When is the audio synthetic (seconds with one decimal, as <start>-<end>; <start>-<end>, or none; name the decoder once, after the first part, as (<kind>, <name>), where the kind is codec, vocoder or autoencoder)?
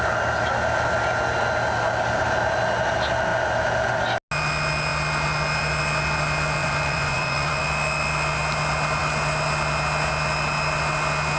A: 6.6-7.6 (vocoder, Vocos)